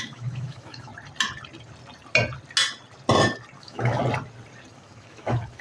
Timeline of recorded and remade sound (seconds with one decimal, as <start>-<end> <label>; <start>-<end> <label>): 0.0-0.9 remade; 0.9-3.6 recorded; 3.6-4.0 remade; 4.0-4.7 recorded; 4.7-5.6 remade